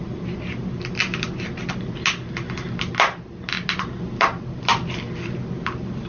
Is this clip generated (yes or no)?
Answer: no